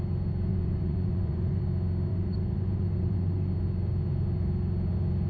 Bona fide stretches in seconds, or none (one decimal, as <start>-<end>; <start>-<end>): 0.0-0.5; 1.6-2.1; 3.5-5.3